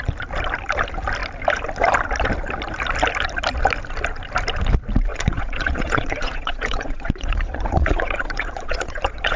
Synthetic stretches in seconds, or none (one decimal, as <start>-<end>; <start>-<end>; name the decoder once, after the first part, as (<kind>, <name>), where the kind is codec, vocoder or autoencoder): 5.1-9.4 (vocoder, Vocos)